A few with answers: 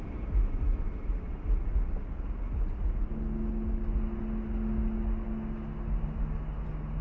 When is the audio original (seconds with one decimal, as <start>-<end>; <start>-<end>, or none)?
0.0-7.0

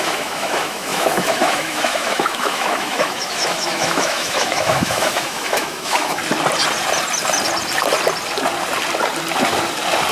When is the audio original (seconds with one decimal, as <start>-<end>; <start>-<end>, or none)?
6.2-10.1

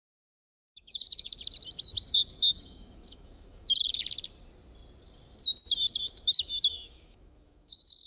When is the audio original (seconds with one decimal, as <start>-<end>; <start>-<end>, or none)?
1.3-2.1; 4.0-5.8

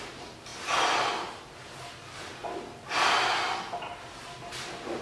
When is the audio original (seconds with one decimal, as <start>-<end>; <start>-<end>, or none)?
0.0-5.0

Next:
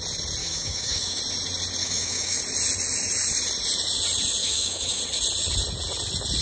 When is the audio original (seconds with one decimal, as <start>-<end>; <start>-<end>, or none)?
0.0-0.4; 1.2-1.8; 2.4-4.4; 5.0-6.4

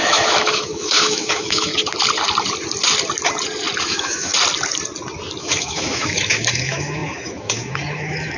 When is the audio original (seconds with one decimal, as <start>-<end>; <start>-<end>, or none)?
1.7-3.8; 4.3-5.4

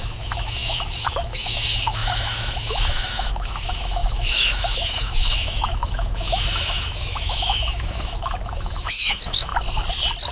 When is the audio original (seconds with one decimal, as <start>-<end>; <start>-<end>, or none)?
9.5-10.3